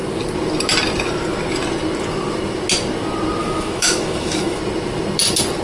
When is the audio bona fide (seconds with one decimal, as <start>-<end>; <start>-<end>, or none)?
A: 0.0-3.4; 4.6-5.6